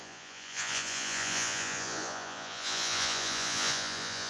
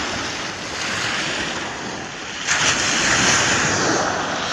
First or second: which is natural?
second